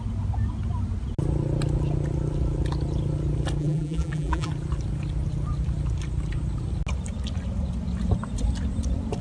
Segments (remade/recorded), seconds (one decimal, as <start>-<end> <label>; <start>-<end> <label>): 0.0-3.6 recorded; 3.6-4.5 remade; 4.5-9.2 recorded